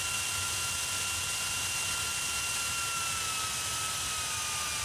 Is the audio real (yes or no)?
yes